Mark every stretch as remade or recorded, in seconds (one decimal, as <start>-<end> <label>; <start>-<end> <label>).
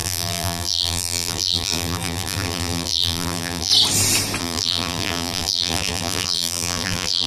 0.0-3.7 remade; 3.7-4.4 recorded; 4.4-7.3 remade